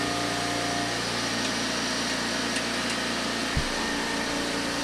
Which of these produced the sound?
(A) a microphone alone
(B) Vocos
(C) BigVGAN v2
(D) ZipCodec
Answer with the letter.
A